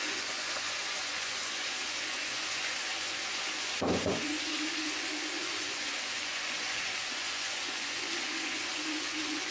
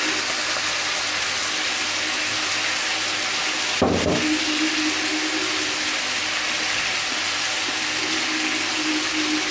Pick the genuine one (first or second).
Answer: second